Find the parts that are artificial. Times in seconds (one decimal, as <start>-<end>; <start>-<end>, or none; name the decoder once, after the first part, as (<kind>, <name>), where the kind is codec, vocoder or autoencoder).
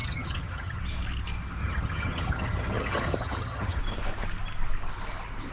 0.0-0.8 (vocoder, HiFi-GAN); 1.6-3.8